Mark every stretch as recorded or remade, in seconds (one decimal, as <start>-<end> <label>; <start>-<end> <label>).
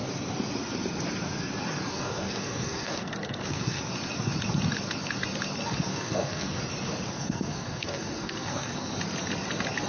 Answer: 0.0-1.9 recorded; 1.9-3.8 remade; 3.8-5.9 recorded; 5.9-6.6 remade; 6.6-7.1 recorded; 7.1-8.9 remade; 8.9-9.9 recorded